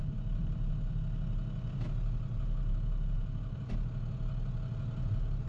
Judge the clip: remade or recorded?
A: recorded